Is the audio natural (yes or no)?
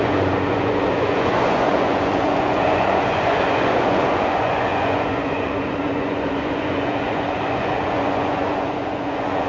no